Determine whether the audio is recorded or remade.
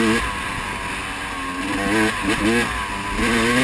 recorded